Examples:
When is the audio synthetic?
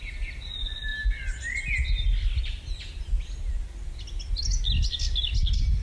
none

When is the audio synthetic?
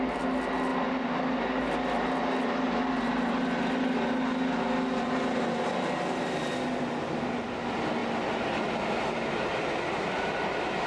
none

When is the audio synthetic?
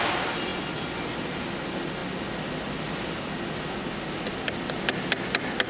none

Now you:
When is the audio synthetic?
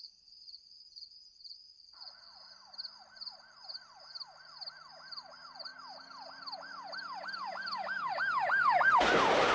none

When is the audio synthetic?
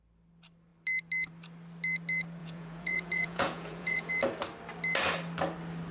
2.4-4.1 (vocoder, Vocos)